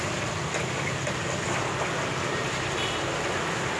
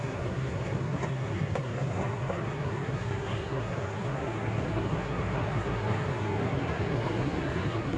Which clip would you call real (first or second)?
first